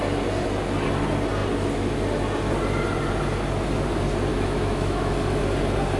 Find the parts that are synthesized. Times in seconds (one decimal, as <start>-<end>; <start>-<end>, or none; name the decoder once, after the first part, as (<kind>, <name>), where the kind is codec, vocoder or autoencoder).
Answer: 4.3-5.1 (autoencoder, DAC-VAE)